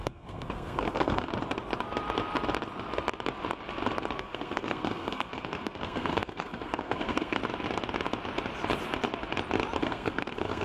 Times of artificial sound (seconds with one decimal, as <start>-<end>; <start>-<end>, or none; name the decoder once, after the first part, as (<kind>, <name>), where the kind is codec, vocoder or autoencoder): 0.0-1.3 (codec, SNAC); 4.2-7.4; 9.8-10.6